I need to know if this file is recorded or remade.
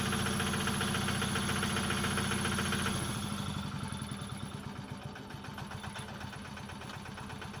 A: recorded